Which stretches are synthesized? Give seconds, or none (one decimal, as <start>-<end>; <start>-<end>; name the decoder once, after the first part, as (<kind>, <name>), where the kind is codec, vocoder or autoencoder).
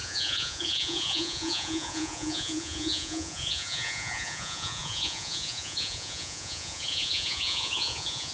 0.0-8.3 (vocoder, Vocos)